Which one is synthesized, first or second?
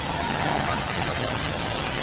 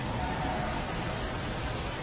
first